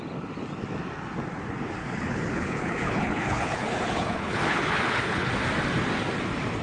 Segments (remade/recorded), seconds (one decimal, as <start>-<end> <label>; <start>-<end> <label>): 0.0-1.8 recorded; 1.8-5.3 remade; 5.3-6.6 recorded